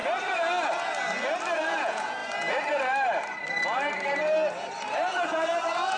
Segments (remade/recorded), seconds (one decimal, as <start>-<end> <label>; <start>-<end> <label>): 0.0-1.6 recorded; 1.6-2.2 remade; 2.2-6.0 recorded